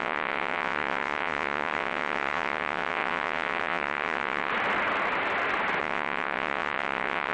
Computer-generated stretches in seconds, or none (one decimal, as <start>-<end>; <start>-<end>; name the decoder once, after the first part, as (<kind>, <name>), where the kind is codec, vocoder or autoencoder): 0.0-4.5 (vocoder, WaveNeXt); 5.8-7.3